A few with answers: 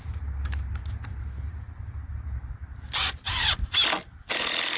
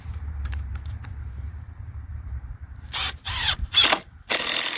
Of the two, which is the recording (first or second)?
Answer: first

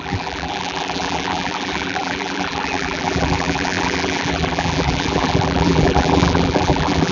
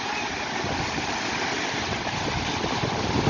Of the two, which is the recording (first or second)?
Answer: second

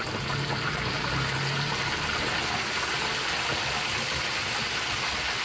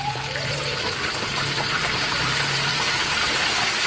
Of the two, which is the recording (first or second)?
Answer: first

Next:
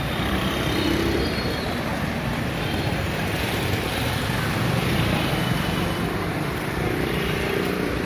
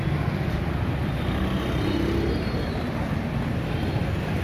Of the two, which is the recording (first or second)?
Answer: second